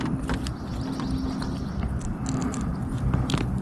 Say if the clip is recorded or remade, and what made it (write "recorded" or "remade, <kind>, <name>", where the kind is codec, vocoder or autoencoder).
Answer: recorded